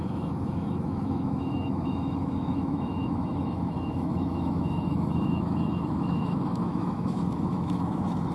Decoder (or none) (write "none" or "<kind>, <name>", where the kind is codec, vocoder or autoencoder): autoencoder, DAC-VAE